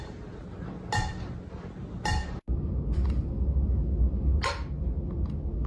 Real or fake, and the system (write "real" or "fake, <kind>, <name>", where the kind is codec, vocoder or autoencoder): real